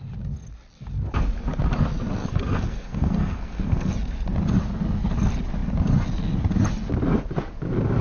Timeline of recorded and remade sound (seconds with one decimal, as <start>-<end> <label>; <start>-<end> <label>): 0.0-2.2 recorded; 2.2-3.9 remade; 3.9-8.0 recorded